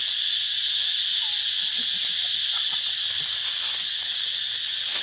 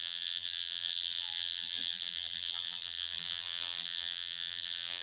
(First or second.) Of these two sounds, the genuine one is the first